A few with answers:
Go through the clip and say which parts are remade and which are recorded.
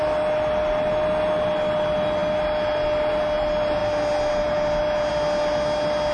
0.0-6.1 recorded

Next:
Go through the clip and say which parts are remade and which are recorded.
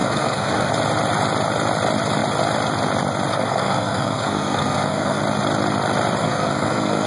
0.0-0.7 remade; 0.7-3.3 recorded; 3.3-5.2 remade; 5.2-6.2 recorded; 6.2-7.1 remade